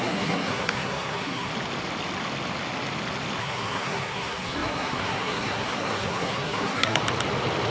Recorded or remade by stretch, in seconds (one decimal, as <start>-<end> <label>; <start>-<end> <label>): 0.0-1.5 remade; 1.5-3.4 recorded; 3.4-7.0 remade; 7.0-7.7 recorded